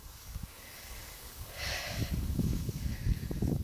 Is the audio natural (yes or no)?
no